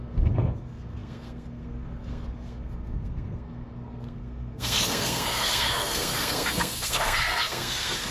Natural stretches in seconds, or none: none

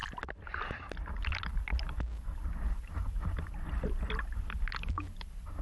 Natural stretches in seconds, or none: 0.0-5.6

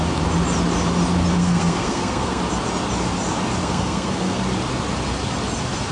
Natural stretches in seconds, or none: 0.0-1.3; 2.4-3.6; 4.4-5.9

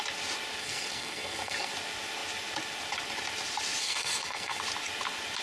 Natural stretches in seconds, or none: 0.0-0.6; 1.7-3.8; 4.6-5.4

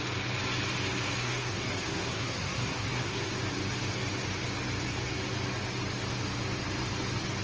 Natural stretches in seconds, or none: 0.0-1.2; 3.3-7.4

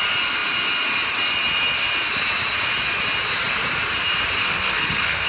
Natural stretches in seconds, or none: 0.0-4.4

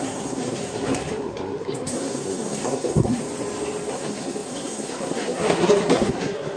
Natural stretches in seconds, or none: 3.2-3.9